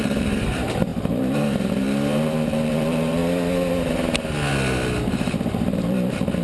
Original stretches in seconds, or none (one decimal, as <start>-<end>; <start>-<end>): 3.2-5.1